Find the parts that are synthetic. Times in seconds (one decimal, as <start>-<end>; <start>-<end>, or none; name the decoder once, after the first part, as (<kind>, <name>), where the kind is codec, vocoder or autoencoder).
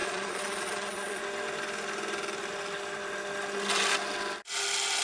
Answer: 0.0-1.2 (vocoder, Vocos)